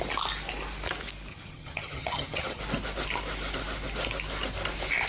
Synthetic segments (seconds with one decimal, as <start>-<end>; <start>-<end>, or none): 1.3-2.6